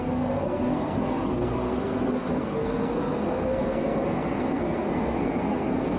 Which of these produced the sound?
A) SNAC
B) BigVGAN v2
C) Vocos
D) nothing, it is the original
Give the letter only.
A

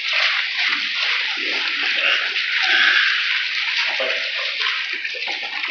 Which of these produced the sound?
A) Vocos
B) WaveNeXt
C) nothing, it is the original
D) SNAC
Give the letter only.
C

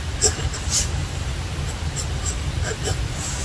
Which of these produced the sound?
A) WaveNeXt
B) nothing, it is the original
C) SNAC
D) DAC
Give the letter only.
B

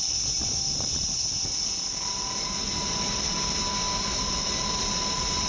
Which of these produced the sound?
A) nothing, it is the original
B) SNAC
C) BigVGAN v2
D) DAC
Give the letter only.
A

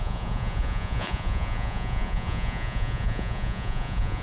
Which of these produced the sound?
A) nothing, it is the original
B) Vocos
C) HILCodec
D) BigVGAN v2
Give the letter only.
B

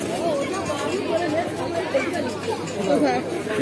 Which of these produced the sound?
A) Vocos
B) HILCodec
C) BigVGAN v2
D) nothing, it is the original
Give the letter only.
D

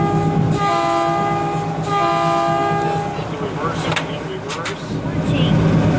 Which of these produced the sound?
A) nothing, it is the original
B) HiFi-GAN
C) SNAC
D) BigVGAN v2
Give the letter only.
A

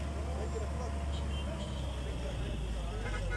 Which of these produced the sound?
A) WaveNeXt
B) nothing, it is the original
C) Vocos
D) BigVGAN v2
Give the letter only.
B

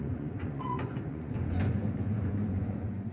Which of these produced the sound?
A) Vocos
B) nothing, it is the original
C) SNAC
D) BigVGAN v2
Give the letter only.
A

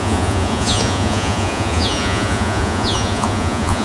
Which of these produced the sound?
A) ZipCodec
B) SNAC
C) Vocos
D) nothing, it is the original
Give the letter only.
C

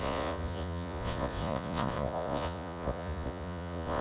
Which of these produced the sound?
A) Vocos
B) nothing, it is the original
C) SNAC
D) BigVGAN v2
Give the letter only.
A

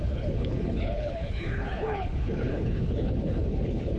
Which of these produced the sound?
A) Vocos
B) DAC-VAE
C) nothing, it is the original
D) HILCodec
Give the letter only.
D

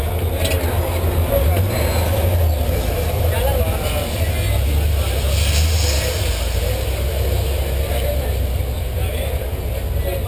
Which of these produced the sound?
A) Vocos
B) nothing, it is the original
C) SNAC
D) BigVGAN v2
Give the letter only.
B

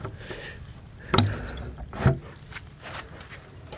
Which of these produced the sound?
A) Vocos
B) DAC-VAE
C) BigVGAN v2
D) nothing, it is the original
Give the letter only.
D